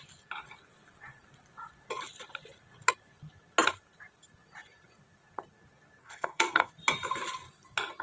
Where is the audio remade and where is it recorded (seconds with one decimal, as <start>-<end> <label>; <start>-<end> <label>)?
0.0-6.0 recorded; 6.0-6.7 remade; 6.7-8.0 recorded